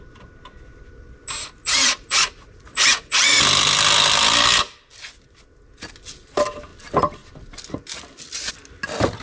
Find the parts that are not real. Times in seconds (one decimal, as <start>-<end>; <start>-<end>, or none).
1.6-3.4